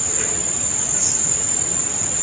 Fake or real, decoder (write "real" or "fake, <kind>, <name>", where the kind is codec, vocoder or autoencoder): real